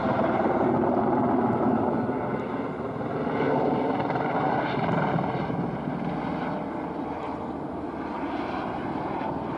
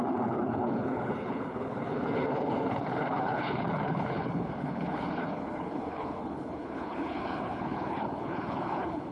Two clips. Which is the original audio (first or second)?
first